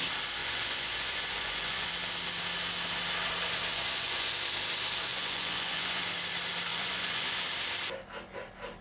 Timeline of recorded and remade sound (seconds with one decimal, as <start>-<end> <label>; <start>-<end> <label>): 0.0-0.4 recorded; 0.4-1.9 remade; 1.9-3.7 recorded; 3.7-4.3 remade; 4.3-5.1 recorded; 5.1-6.0 remade; 6.0-6.7 recorded; 6.7-7.4 remade; 7.4-8.8 recorded